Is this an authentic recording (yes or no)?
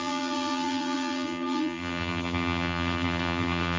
no